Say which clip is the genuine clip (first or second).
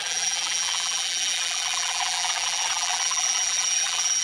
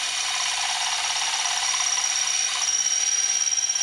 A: second